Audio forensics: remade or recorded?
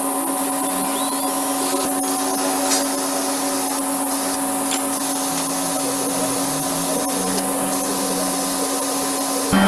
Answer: recorded